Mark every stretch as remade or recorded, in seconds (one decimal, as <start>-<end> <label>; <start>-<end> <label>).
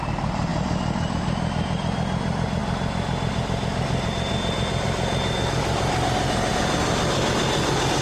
0.0-8.0 recorded